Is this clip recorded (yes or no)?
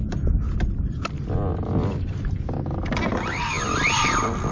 yes